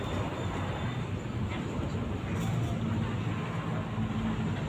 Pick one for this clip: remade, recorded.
recorded